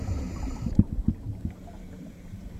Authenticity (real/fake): fake